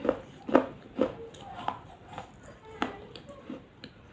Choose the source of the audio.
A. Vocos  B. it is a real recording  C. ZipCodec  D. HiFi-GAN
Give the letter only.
B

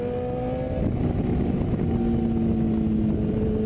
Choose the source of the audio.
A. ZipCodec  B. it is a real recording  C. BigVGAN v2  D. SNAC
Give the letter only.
B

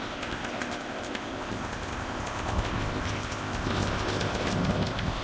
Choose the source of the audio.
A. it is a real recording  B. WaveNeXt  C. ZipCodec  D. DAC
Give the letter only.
C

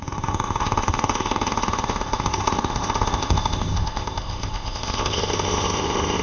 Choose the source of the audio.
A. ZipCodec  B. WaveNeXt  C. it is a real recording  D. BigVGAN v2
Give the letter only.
A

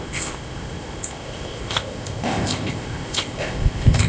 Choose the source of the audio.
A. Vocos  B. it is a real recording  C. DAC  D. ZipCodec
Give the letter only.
D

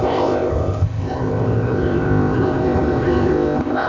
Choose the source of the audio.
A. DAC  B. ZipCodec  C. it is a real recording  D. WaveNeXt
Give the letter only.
B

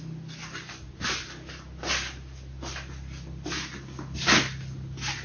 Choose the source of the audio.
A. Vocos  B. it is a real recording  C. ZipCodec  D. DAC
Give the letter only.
B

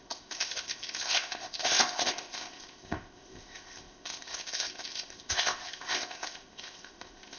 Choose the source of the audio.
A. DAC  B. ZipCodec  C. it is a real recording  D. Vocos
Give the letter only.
B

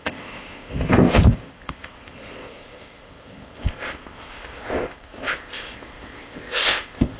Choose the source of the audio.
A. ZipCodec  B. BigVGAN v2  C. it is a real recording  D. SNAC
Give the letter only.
A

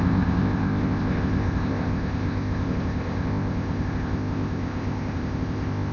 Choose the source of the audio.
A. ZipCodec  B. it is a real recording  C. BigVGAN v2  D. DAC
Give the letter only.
A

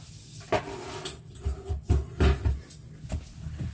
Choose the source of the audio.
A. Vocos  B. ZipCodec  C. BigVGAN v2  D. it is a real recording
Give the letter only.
D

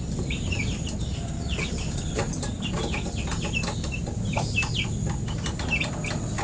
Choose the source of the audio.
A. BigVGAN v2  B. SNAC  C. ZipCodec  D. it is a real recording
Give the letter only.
D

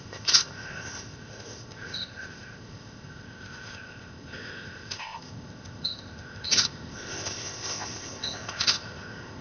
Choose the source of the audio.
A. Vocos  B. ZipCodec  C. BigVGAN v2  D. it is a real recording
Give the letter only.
B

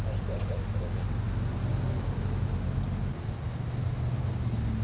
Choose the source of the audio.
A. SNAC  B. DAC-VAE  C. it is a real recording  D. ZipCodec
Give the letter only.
C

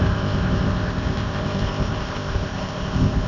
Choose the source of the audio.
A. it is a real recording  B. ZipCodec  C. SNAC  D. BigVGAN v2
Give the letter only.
B